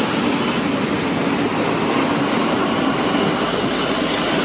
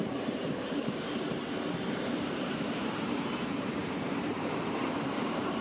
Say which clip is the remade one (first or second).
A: second